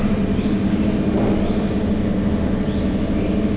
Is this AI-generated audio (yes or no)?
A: no